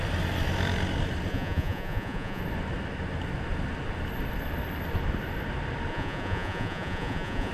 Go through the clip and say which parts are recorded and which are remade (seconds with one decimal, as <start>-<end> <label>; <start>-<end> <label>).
0.0-1.3 recorded; 1.3-2.4 remade; 2.4-5.9 recorded; 5.9-7.5 remade